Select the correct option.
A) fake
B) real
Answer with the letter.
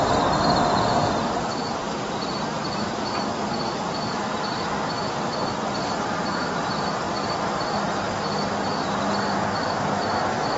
B